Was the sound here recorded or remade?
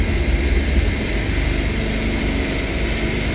recorded